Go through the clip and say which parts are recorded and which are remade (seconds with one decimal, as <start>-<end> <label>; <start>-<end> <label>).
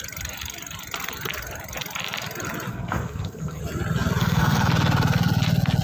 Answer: 0.0-2.7 recorded; 2.7-3.6 remade; 3.6-4.2 recorded; 4.2-4.7 remade; 4.7-5.8 recorded